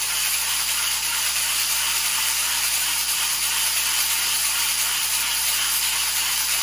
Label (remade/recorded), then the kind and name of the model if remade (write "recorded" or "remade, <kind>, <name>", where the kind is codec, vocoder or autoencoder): remade, vocoder, BigVGAN v2